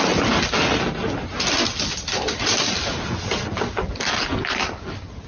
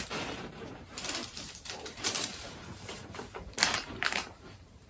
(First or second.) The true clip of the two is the first